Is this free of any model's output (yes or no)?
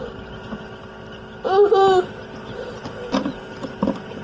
no